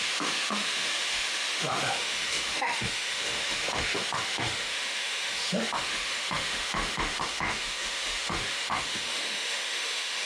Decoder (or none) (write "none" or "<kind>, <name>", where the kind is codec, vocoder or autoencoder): autoencoder, DAC-VAE